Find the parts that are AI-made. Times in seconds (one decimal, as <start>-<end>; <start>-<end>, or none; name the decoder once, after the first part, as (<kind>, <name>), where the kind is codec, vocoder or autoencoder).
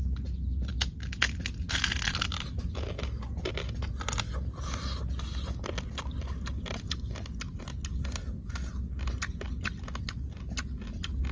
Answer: none